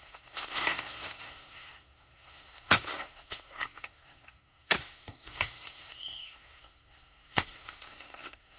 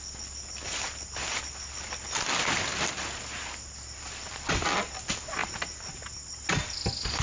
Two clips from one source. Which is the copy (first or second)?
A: first